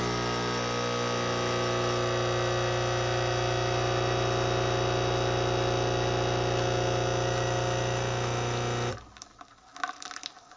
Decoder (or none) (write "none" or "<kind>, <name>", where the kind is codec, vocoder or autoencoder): none